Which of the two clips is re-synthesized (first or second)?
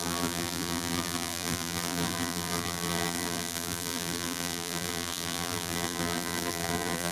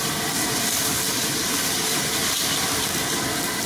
first